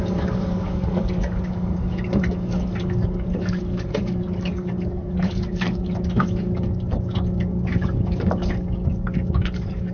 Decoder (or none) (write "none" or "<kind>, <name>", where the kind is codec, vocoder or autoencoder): codec, DAC